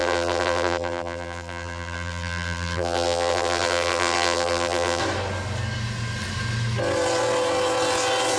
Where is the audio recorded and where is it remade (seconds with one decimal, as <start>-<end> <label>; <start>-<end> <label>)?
0.0-5.0 remade; 5.0-8.4 recorded